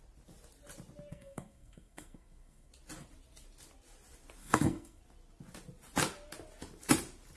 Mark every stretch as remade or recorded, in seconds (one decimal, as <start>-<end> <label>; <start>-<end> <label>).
0.0-1.1 recorded; 1.1-2.7 remade; 2.7-4.4 recorded; 4.4-5.0 remade; 5.0-7.4 recorded